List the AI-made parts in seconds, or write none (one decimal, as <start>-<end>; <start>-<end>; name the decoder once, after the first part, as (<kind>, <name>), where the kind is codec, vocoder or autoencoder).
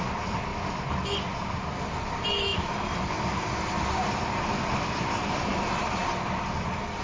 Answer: none